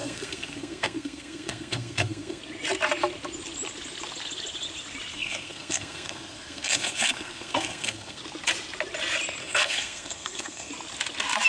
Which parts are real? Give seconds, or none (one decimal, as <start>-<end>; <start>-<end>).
2.4-5.1; 8.2-9.4; 10.7-11.5